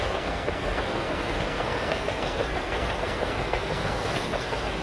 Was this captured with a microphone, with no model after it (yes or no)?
no